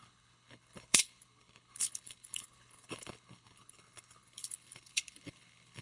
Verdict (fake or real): fake